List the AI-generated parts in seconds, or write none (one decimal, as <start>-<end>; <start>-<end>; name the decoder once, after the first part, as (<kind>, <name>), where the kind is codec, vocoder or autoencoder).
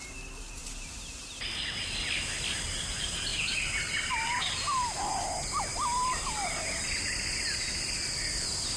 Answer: 0.6-1.6 (vocoder, BigVGAN v2); 3.3-5.0; 5.7-6.4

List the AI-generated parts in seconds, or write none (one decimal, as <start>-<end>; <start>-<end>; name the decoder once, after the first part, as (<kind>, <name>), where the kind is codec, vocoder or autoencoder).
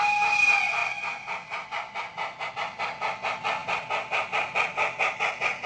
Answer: none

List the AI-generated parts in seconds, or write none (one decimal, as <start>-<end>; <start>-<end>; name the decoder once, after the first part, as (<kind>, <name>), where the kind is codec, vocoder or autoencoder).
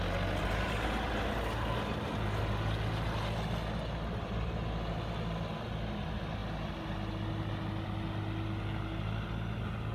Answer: none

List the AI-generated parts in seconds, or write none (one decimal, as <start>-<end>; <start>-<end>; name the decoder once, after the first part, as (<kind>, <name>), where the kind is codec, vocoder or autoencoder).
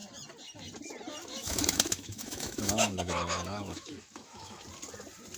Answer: 1.4-4.6 (autoencoder, DAC-VAE)